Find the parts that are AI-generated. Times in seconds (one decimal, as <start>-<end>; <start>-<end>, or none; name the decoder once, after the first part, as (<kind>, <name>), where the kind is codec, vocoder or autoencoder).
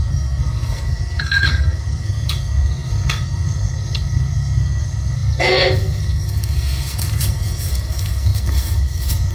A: 0.0-9.3 (codec, SNAC)